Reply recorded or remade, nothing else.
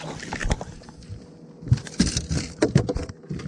recorded